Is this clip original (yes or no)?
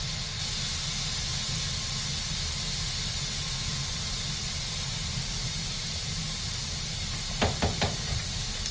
yes